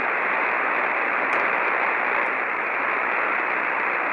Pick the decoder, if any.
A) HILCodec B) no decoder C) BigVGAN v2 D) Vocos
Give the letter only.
B